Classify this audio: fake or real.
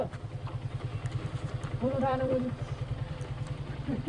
fake